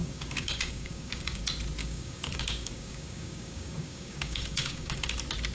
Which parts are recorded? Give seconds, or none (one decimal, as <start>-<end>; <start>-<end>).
1.4-1.8; 5.1-5.5